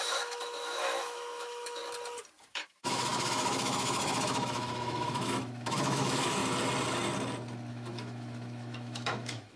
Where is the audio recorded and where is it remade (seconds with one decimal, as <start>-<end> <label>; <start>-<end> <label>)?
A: 0.0-1.8 remade; 1.8-2.5 recorded; 2.5-6.4 remade; 6.4-7.7 recorded; 7.7-9.6 remade